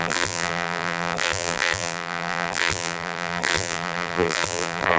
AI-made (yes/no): yes